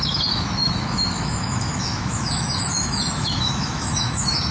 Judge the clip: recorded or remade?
remade